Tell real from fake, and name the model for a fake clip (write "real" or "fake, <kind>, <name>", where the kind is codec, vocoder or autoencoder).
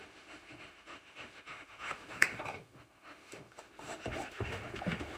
fake, autoencoder, DAC-VAE